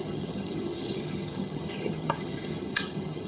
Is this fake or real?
fake